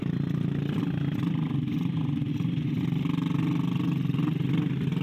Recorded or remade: recorded